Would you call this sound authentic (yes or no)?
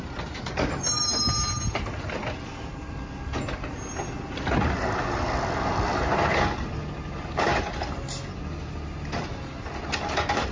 yes